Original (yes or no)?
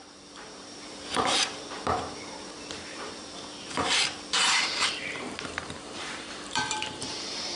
no